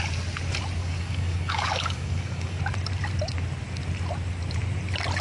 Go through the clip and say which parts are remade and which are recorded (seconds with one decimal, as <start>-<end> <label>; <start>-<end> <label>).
0.0-0.8 recorded; 0.8-2.6 remade; 2.6-5.2 recorded